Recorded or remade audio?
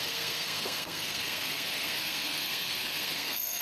remade